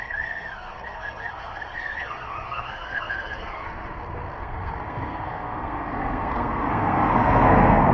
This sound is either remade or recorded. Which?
remade